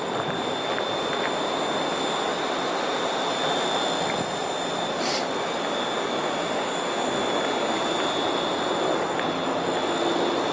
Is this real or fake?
real